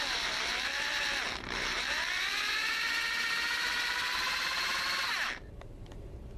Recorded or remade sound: remade